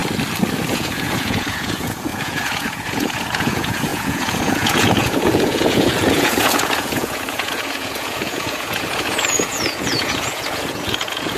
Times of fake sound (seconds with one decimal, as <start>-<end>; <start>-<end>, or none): 0.7-11.4